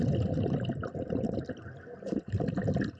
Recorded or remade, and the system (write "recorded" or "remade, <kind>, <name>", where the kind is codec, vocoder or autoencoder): recorded